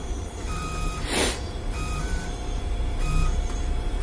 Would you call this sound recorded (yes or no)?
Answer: no